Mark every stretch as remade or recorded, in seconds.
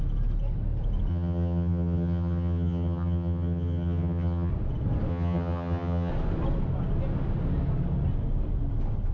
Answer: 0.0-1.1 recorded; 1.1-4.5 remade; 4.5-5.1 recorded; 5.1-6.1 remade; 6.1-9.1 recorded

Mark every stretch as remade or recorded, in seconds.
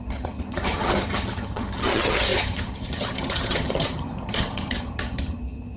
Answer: 0.0-5.8 remade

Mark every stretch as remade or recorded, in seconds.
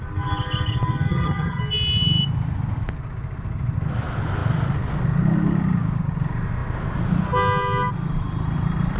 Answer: 0.0-1.1 recorded; 1.1-1.6 remade; 1.6-9.0 recorded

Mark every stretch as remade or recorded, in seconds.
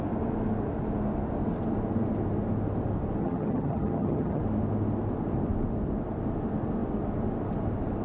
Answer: 0.0-3.2 recorded; 3.2-4.4 remade; 4.4-8.0 recorded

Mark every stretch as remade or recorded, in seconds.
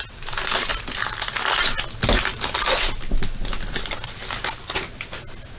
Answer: 0.0-5.6 recorded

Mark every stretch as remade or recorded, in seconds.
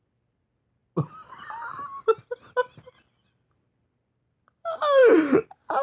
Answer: 0.0-5.8 recorded